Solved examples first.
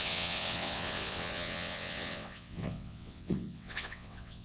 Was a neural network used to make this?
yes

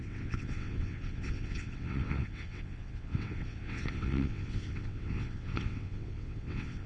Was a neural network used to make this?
yes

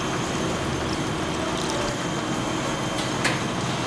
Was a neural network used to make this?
no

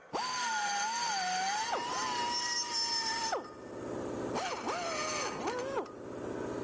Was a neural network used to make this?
no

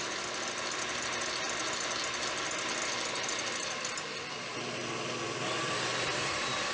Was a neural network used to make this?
no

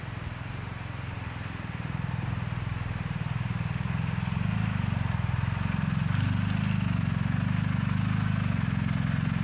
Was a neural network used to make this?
no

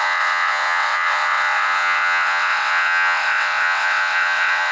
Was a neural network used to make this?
yes